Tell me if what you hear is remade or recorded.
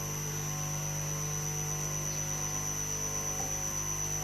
recorded